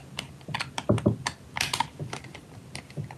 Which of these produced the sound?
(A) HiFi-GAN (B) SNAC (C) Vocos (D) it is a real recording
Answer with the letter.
D